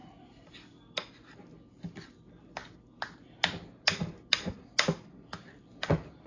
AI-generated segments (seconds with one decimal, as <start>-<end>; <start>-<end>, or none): none